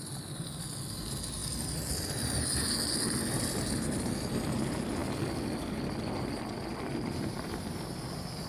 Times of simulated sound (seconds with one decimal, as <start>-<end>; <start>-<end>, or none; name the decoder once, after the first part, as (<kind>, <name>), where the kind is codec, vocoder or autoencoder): none

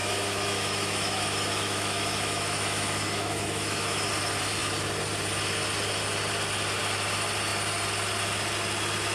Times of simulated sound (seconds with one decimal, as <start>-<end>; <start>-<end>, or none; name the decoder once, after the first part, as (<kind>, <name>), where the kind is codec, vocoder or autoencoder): 0.0-4.1 (autoencoder, DAC-VAE)

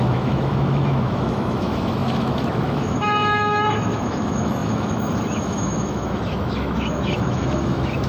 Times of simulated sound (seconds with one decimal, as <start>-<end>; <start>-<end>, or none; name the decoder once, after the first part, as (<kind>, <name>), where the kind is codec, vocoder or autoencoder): 0.0-8.1 (autoencoder, DAC-VAE)

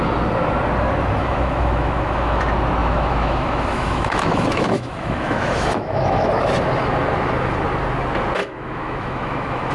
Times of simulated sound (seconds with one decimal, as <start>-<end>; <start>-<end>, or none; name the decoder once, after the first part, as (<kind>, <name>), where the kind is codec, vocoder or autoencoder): 1.2-2.4 (autoencoder, DAC-VAE); 2.8-6.3; 8.4-9.7

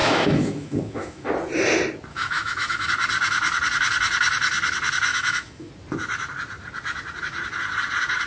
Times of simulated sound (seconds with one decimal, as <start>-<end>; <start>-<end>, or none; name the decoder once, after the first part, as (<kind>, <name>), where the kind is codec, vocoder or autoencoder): 0.0-1.3 (autoencoder, DAC-VAE); 2.1-2.9; 5.1-5.7

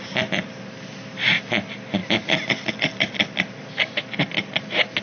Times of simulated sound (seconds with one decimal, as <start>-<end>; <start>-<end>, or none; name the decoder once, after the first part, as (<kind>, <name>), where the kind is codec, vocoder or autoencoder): none